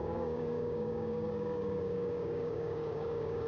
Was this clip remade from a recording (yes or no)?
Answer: yes